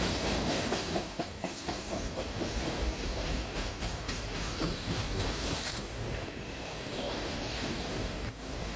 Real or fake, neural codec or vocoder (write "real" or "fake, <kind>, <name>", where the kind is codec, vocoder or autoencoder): fake, codec, DAC